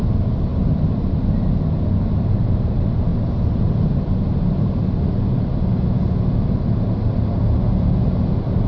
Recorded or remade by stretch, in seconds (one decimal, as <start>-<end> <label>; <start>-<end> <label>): 0.0-8.7 recorded